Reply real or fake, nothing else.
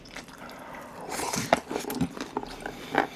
fake